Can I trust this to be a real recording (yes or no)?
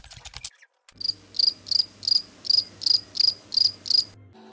yes